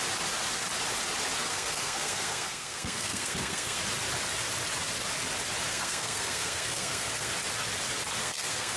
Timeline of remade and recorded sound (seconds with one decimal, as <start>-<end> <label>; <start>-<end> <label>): 0.0-1.5 recorded; 1.5-3.8 remade; 3.8-5.7 recorded; 5.7-7.3 remade; 7.3-8.2 recorded; 8.2-8.8 remade